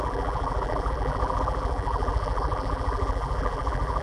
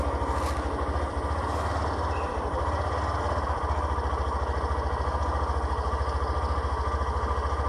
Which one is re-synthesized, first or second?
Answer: first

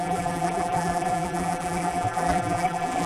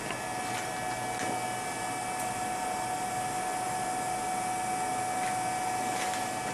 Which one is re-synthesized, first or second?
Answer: first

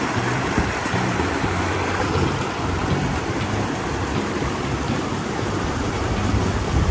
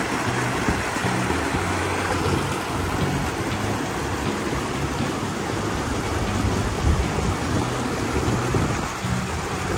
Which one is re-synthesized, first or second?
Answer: first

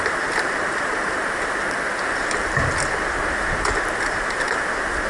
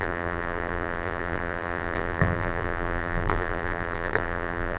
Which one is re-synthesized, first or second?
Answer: second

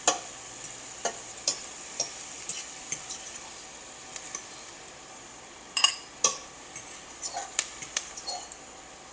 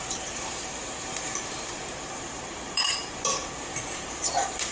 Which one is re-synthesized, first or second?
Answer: second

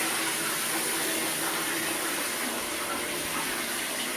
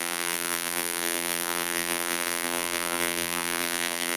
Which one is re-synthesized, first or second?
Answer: second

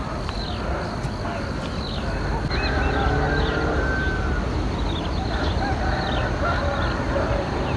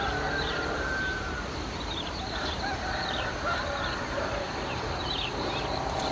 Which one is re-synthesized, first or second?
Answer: second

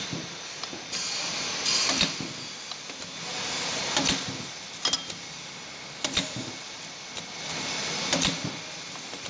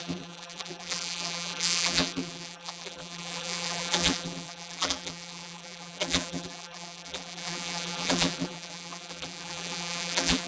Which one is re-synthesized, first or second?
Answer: second